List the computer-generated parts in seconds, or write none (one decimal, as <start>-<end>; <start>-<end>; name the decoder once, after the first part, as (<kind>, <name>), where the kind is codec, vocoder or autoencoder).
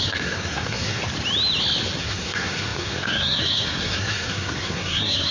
0.0-1.0 (codec, SNAC); 2.0-5.3